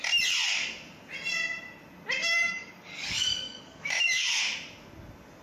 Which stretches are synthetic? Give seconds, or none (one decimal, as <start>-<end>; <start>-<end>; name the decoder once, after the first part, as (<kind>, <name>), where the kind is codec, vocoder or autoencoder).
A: 2.2-4.4 (codec, DAC)